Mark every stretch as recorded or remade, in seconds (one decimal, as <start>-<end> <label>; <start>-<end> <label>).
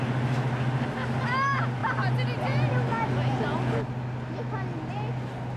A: 0.0-5.6 recorded